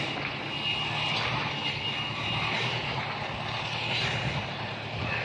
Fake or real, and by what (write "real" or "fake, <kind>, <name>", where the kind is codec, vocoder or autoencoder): real